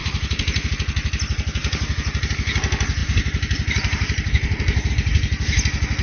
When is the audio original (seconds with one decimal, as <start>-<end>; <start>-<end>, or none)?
0.7-1.6; 2.3-3.0; 4.9-6.0